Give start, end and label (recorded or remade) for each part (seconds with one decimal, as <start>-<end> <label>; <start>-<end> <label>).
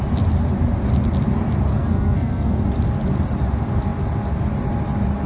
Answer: 0.0-1.7 recorded; 1.7-2.6 remade; 2.6-5.3 recorded